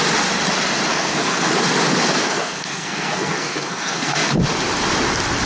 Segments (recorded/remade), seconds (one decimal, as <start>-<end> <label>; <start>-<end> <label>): 0.0-0.9 recorded; 0.9-1.5 remade; 1.5-2.2 recorded; 2.2-4.3 remade; 4.3-5.5 recorded